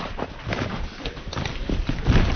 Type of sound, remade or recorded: recorded